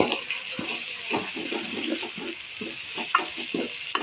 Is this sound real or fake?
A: real